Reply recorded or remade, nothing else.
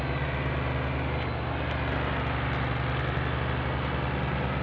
recorded